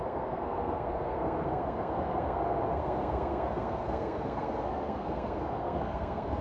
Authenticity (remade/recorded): remade